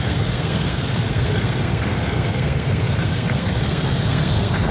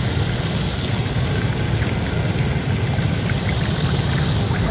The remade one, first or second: first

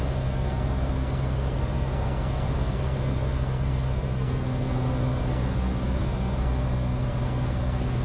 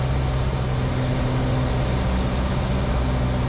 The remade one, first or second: first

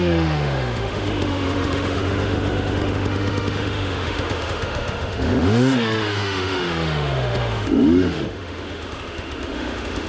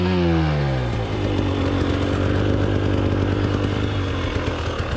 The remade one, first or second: first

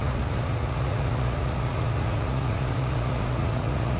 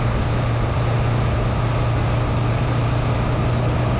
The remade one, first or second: first